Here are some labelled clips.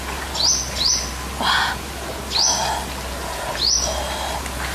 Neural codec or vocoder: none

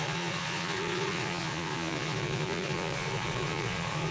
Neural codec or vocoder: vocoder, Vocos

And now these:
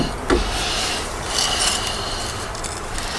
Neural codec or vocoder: none